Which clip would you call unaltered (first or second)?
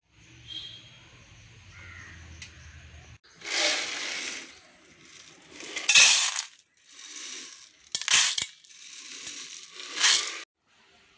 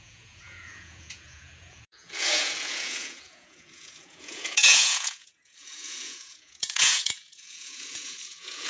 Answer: first